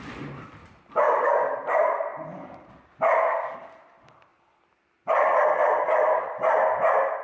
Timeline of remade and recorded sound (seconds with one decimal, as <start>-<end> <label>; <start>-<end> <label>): 0.0-7.2 recorded